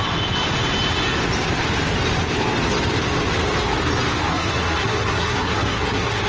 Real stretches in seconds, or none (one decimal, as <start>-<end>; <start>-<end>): 0.0-4.3